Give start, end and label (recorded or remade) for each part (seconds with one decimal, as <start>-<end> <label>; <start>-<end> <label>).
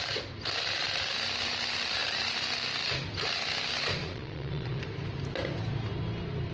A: 0.0-4.0 recorded; 4.0-4.8 remade; 4.8-6.5 recorded